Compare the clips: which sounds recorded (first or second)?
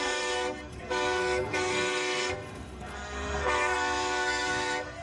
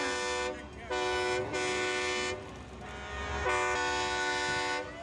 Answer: second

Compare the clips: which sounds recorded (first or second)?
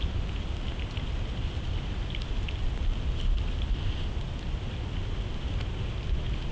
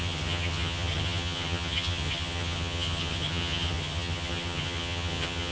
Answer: first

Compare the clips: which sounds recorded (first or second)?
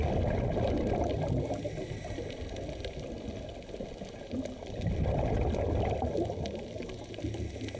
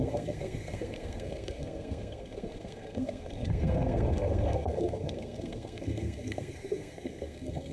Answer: first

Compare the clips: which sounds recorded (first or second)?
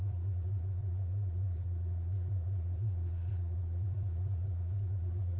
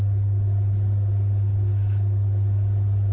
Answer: second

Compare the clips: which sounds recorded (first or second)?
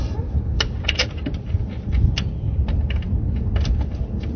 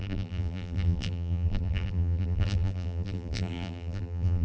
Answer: first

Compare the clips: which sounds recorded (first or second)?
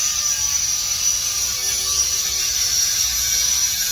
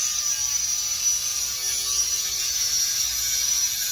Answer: second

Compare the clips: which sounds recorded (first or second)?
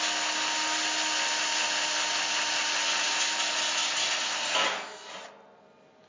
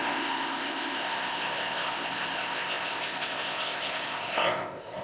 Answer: first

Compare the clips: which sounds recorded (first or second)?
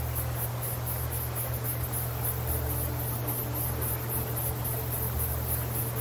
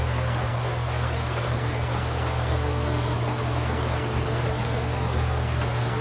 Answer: first